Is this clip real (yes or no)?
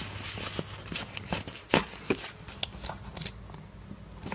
yes